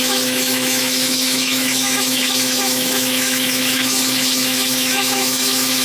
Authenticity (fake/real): fake